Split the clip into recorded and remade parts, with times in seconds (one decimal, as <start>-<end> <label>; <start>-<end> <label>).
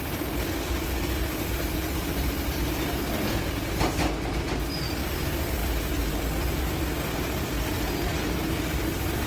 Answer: 0.0-9.3 recorded